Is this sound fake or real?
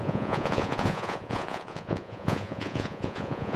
fake